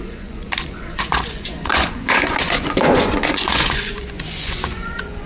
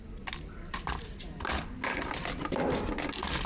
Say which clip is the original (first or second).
second